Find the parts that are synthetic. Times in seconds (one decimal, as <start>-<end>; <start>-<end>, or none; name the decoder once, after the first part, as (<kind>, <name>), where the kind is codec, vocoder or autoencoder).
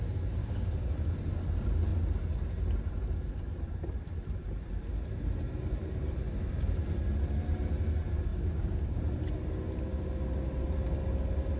0.4-0.9 (codec, DAC); 8.3-9.0